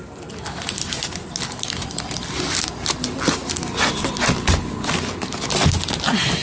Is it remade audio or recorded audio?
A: recorded